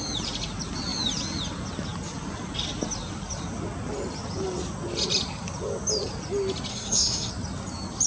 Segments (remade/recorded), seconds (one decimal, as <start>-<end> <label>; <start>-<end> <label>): 0.0-6.7 recorded; 6.7-7.3 remade; 7.3-8.1 recorded